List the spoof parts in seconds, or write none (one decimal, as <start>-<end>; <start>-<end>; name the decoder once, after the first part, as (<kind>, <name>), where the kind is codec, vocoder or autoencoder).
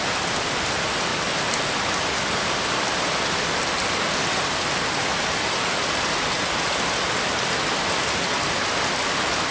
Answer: none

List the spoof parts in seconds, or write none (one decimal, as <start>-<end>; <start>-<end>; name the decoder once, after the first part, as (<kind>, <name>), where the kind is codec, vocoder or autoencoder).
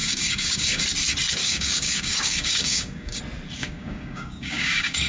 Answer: 0.0-0.8 (codec, DAC); 1.4-3.2; 3.6-5.1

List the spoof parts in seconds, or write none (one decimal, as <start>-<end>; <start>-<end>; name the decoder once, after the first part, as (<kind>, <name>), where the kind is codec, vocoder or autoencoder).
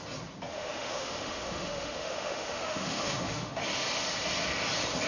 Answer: 0.5-3.6 (autoencoder, DAC-VAE)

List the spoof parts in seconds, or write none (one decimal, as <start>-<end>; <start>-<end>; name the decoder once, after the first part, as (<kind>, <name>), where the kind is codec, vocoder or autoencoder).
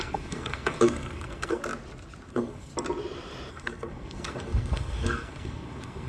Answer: 0.0-1.6 (codec, SNAC); 2.3-2.7; 3.5-6.1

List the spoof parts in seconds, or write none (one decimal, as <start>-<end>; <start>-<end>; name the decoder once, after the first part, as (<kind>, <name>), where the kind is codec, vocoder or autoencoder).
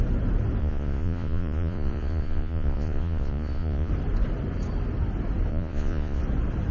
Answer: 0.6-3.9 (vocoder, Vocos); 5.5-6.2